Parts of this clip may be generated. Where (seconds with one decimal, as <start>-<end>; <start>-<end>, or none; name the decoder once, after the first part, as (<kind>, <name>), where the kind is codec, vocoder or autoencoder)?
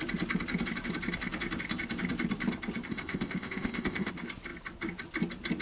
2.9-4.1 (codec, ZipCodec)